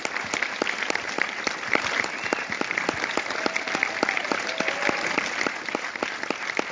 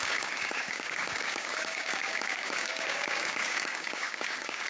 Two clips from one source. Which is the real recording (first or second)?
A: first